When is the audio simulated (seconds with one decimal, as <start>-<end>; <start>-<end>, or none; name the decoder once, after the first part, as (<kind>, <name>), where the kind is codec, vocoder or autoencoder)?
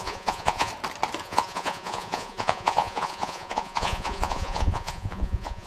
0.0-0.7 (vocoder, Vocos); 1.2-5.7